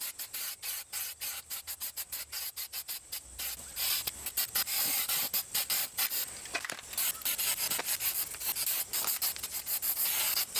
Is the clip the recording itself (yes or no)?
yes